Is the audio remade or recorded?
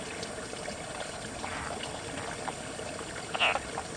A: recorded